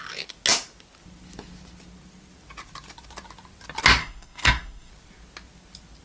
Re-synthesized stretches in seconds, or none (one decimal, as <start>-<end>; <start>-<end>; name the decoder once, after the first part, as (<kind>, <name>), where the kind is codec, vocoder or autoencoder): 4.0-4.9 (codec, SNAC)